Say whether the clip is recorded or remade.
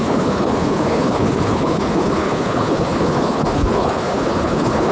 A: remade